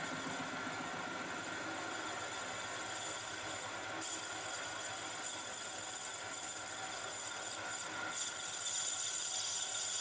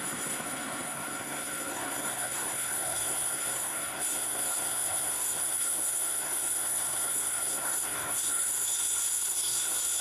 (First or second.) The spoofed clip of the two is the second